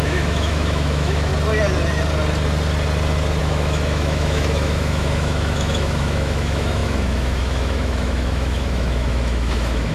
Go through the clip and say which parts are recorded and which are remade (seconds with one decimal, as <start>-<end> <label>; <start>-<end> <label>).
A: 0.0-1.3 remade; 1.3-3.4 recorded; 3.4-9.9 remade